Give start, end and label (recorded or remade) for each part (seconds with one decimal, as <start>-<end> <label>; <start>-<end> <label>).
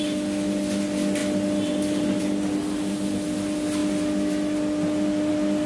0.0-5.7 recorded